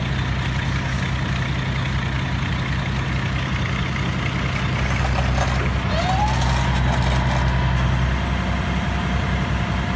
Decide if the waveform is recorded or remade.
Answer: recorded